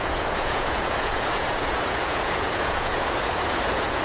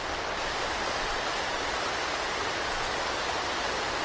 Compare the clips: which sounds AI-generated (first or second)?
first